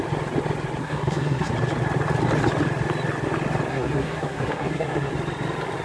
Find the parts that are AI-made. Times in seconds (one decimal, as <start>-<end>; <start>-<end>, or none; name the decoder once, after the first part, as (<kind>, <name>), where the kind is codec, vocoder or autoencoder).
0.8-1.5 (codec, SNAC); 3.7-5.1